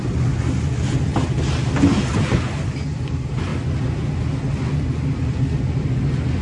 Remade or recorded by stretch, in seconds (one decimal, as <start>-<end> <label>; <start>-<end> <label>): 0.0-6.4 recorded